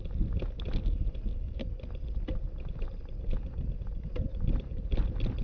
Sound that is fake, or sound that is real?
real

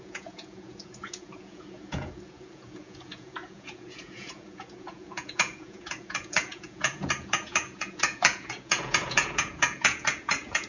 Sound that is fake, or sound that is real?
fake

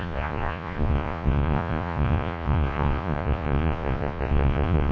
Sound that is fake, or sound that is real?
fake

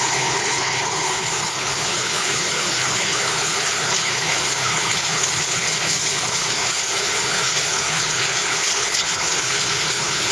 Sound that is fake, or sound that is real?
fake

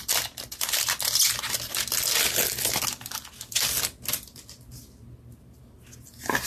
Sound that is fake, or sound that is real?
real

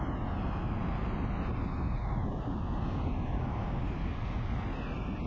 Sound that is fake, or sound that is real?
real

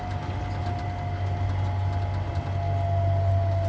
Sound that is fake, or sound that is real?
real